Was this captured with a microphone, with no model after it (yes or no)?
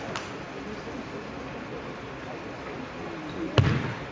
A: yes